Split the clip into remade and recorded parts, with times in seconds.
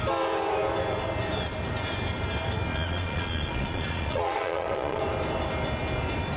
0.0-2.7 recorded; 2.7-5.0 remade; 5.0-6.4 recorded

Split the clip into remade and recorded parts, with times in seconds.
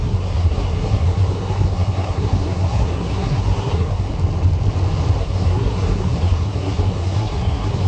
0.0-4.1 remade; 4.1-5.2 recorded; 5.2-7.9 remade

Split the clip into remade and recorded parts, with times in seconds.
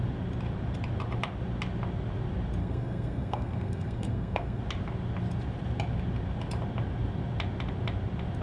0.0-2.6 recorded; 2.6-4.6 remade; 4.6-8.4 recorded